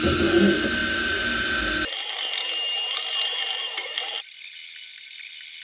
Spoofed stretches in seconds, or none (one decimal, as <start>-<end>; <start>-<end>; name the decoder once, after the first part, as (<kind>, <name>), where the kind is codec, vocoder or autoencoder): none